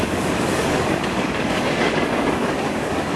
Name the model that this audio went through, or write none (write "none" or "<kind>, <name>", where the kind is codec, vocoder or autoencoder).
codec, DAC